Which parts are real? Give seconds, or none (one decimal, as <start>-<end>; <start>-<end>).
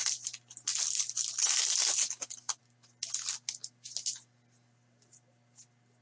0.0-2.0; 2.6-6.0